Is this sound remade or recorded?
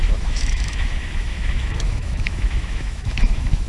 remade